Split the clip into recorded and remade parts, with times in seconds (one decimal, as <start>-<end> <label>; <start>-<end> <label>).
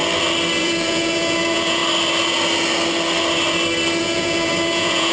0.0-0.6 recorded; 0.6-1.8 remade; 1.8-4.0 recorded; 4.0-5.1 remade